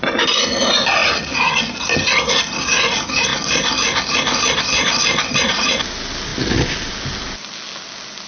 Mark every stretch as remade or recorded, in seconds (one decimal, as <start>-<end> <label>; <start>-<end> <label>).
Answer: 0.0-8.3 recorded